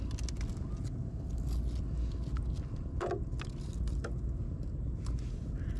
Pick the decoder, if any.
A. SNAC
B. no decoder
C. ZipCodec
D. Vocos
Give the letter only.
B